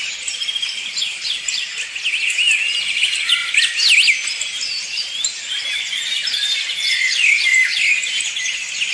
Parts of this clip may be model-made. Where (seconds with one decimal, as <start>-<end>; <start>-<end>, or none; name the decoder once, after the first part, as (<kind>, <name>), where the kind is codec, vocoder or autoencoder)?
none